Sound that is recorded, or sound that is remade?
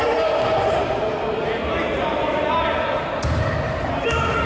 recorded